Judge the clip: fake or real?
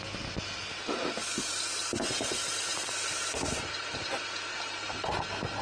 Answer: real